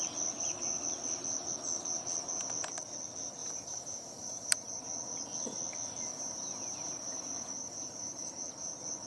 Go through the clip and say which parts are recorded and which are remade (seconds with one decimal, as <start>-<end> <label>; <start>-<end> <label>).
0.0-3.4 recorded; 3.4-4.8 remade; 4.8-6.1 recorded; 6.1-8.3 remade; 8.3-9.1 recorded